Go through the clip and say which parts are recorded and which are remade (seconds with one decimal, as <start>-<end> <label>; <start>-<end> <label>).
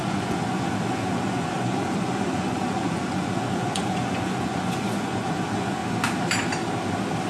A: 0.0-5.8 remade; 5.8-7.3 recorded